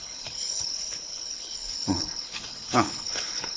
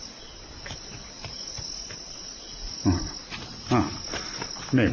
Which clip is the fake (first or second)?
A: first